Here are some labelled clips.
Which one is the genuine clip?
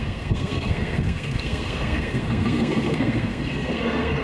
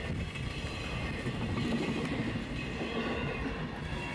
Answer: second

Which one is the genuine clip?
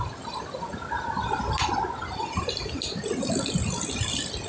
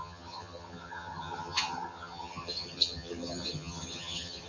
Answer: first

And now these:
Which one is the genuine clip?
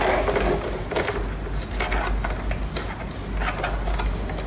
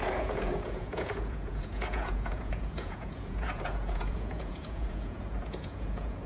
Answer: first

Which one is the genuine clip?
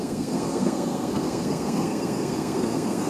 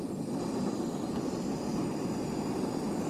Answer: second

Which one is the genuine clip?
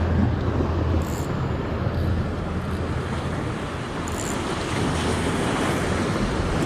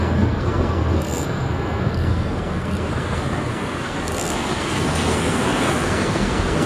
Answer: first